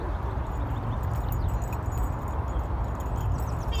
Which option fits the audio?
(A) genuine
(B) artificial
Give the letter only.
A